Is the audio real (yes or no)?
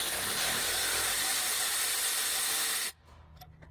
yes